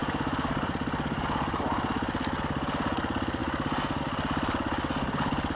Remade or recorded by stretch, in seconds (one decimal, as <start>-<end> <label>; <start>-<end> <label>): 0.0-5.6 recorded